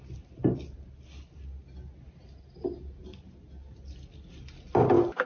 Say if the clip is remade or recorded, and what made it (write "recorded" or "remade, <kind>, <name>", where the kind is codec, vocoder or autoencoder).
recorded